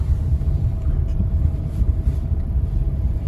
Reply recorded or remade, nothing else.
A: remade